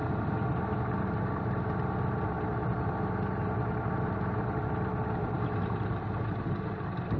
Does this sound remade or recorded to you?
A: recorded